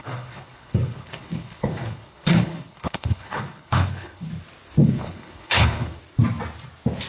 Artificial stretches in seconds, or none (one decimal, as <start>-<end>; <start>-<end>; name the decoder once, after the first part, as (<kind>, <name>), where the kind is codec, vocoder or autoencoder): 0.0-4.3 (codec, HILCodec); 4.8-6.0